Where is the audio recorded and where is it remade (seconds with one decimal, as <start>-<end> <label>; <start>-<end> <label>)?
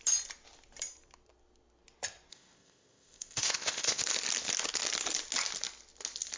0.0-2.3 recorded; 2.3-4.0 remade; 4.0-6.4 recorded